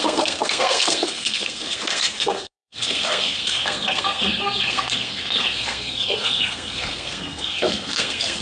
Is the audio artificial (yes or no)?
yes